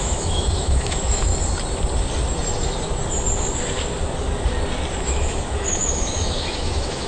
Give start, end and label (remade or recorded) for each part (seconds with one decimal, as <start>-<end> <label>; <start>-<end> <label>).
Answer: 0.0-1.3 remade; 1.3-5.0 recorded; 5.0-7.1 remade